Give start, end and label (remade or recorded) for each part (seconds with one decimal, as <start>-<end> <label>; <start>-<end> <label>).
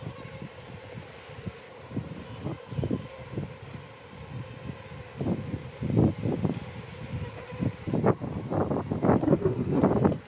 0.0-9.2 recorded; 9.2-9.8 remade; 9.8-10.3 recorded